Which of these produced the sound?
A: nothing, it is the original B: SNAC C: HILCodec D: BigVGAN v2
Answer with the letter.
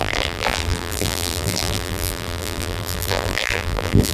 D